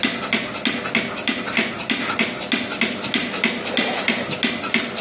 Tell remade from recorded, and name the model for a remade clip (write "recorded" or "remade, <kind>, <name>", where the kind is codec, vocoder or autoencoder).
recorded